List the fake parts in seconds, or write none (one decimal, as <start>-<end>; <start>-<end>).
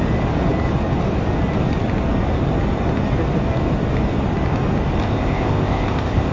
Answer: 5.0-6.3